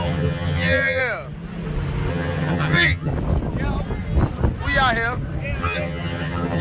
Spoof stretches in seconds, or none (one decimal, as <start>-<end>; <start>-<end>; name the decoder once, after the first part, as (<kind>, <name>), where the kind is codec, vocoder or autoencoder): 0.0-1.0 (vocoder, HiFi-GAN); 2.1-3.1; 5.6-6.6